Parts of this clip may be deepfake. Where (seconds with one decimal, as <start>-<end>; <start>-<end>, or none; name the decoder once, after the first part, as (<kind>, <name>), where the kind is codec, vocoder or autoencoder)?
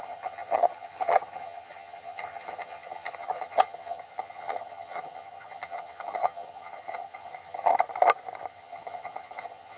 0.0-7.7 (vocoder, HiFi-GAN); 8.5-9.8